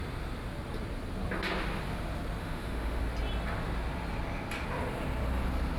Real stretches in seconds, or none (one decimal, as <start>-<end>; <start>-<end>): 0.0-2.4; 3.0-5.8